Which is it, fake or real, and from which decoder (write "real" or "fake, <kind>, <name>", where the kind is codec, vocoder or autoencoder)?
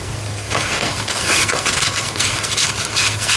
fake, codec, SNAC